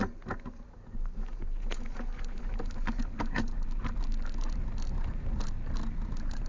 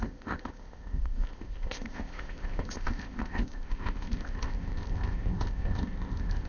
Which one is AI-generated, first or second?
second